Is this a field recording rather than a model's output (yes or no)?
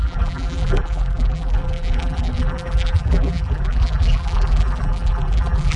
no